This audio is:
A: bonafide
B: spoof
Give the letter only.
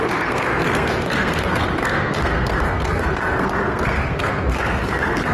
B